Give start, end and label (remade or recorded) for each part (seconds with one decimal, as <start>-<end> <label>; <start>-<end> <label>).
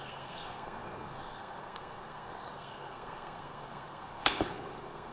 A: 0.0-5.1 remade